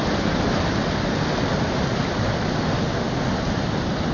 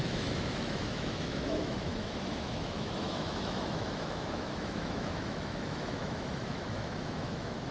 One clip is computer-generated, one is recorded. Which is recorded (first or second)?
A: first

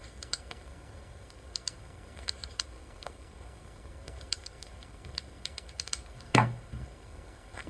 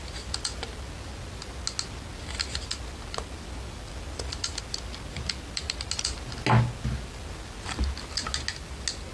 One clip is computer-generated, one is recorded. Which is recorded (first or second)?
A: second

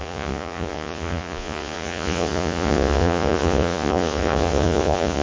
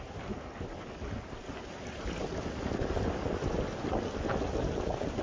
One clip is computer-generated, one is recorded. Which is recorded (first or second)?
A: second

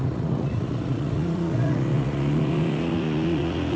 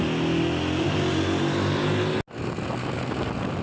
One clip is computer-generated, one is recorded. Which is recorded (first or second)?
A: second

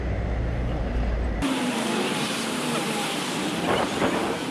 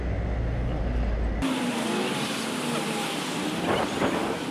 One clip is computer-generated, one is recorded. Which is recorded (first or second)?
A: second